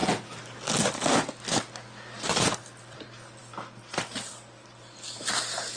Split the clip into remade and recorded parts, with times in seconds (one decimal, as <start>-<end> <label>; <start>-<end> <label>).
0.0-5.8 recorded